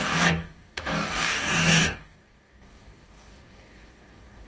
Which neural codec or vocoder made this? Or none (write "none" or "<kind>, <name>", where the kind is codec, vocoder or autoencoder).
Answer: codec, DAC